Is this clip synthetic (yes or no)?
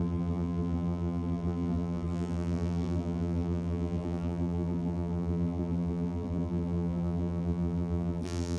yes